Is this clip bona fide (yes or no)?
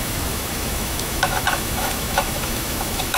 no